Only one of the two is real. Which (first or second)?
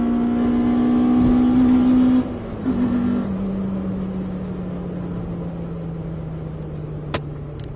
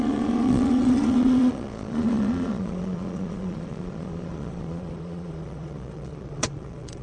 first